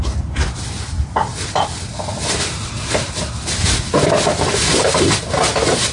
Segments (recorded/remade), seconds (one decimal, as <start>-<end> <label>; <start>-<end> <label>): 0.0-5.9 recorded